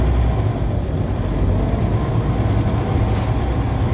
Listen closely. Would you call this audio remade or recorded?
recorded